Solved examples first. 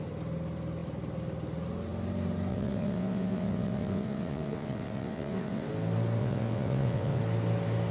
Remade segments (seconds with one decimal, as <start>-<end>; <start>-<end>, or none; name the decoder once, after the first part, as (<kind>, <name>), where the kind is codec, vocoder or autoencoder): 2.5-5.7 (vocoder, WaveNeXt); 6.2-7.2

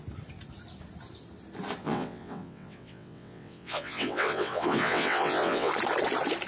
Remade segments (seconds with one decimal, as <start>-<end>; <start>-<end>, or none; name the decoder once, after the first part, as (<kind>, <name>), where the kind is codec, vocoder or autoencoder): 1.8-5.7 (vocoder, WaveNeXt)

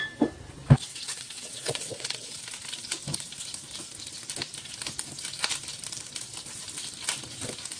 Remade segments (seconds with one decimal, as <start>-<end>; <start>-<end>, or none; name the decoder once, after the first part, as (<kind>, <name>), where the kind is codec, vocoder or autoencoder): 0.9-2.4 (vocoder, WaveNeXt)

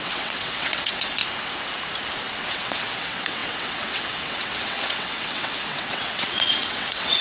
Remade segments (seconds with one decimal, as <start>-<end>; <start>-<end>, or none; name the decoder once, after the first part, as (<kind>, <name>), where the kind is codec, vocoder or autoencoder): 0.0-1.2 (vocoder, WaveNeXt); 2.5-7.2

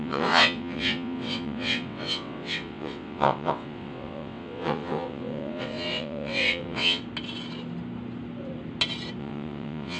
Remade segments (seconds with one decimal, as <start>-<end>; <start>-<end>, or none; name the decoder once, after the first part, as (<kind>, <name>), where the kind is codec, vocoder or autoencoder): 0.0-7.0 (vocoder, WaveNeXt); 9.2-10.0